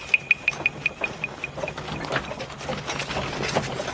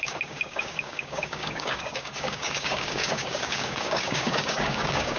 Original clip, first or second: first